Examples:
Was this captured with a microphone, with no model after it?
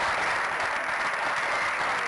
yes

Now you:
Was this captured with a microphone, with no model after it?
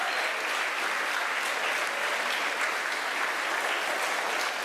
yes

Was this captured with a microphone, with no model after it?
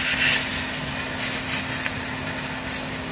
yes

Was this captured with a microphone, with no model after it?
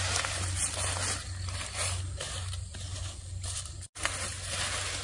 yes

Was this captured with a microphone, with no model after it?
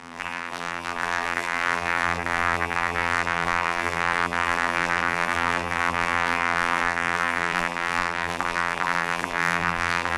no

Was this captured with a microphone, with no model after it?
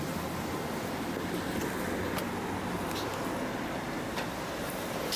yes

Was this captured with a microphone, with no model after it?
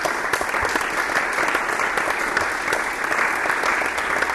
yes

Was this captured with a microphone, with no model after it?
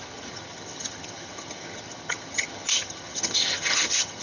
no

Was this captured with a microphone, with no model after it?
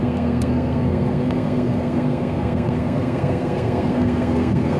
no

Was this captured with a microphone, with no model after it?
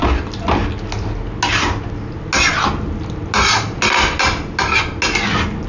yes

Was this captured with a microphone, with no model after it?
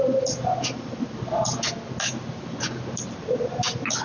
yes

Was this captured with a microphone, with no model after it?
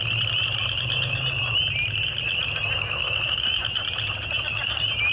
yes